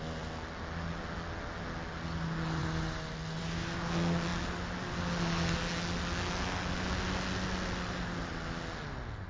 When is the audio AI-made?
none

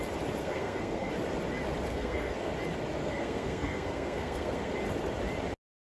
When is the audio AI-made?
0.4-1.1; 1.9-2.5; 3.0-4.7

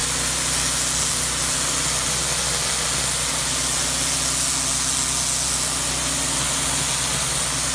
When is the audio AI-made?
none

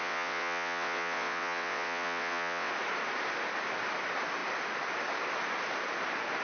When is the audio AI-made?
0.0-2.7

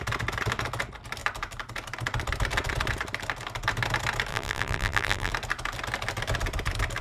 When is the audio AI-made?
4.3-5.3

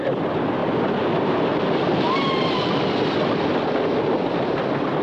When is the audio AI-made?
none

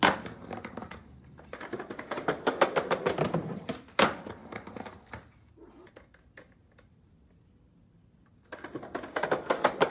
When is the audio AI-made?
none